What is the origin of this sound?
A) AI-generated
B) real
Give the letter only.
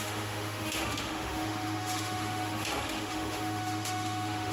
A